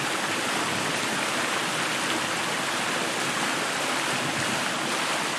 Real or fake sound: real